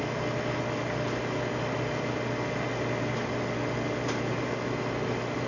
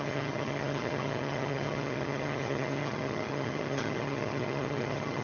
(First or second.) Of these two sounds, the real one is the first